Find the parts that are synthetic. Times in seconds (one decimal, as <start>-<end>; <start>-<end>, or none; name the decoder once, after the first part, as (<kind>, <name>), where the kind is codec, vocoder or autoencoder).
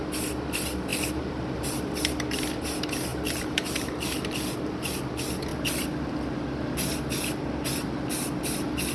0.9-1.9 (vocoder, BigVGAN v2); 3.1-5.0